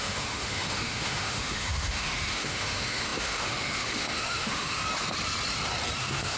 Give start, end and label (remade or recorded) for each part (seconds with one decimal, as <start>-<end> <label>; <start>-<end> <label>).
0.0-4.8 remade; 4.8-6.0 recorded; 6.0-6.4 remade